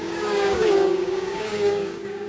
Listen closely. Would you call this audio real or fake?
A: fake